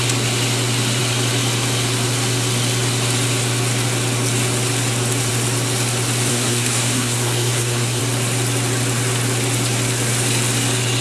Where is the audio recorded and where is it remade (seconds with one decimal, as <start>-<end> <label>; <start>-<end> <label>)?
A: 0.0-6.3 recorded; 6.3-8.0 remade; 8.0-11.0 recorded